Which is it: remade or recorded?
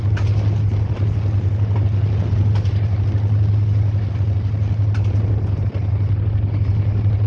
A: recorded